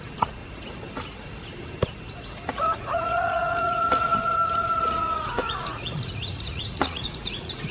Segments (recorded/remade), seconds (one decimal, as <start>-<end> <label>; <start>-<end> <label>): 0.0-0.4 remade; 0.4-2.5 recorded; 2.5-7.7 remade

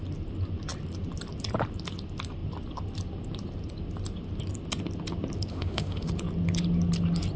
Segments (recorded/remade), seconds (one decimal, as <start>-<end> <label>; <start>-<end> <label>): 0.0-5.5 recorded; 5.5-6.1 remade; 6.1-7.4 recorded